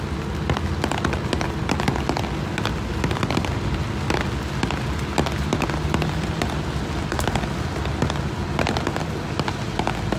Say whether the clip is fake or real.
real